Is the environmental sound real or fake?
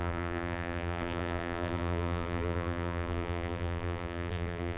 fake